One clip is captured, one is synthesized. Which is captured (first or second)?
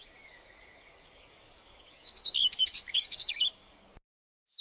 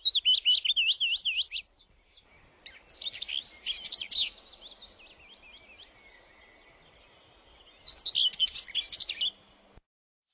second